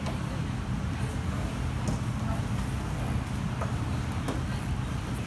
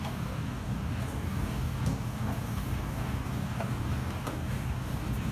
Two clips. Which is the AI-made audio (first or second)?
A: second